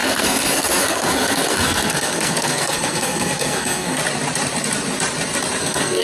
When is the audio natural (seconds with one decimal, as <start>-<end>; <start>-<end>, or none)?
4.0-5.6